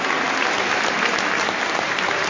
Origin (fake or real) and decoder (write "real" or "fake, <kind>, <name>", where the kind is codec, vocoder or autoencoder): real